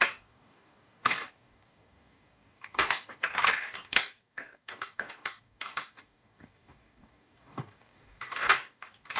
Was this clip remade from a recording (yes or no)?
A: yes